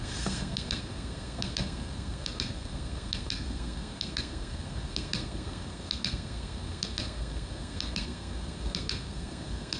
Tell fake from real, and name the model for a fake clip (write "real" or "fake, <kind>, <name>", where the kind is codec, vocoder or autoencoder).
fake, codec, SNAC